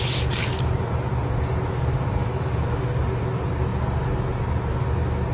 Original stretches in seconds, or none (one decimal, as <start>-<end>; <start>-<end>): 0.0-2.2; 2.9-5.3